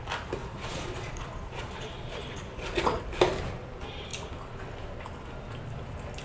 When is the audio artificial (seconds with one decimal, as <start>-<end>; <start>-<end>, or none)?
0.4-3.0